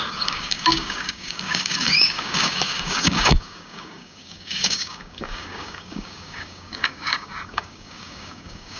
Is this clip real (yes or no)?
no